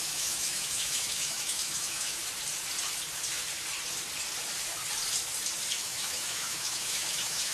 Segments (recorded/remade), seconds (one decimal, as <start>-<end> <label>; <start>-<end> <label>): 0.0-2.2 remade; 2.2-5.7 recorded; 5.7-7.5 remade

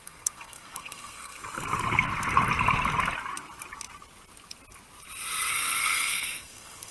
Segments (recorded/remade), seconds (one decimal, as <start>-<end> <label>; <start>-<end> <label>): 0.0-1.4 remade; 1.4-5.5 recorded; 5.5-6.9 remade

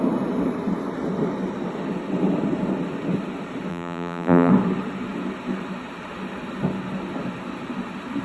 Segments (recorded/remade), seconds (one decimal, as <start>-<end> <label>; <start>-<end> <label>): 0.0-3.7 recorded; 3.7-4.5 remade; 4.5-8.2 recorded